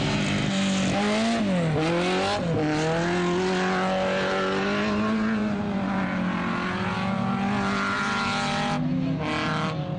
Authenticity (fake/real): real